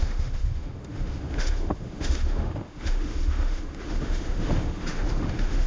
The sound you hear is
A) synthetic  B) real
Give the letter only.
A